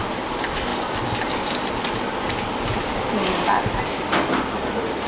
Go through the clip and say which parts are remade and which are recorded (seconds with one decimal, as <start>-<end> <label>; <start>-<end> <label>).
0.0-5.1 recorded